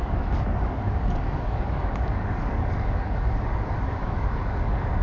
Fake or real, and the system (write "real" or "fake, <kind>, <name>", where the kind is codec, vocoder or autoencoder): fake, codec, DAC